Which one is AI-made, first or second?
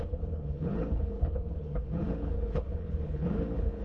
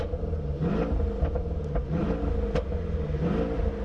first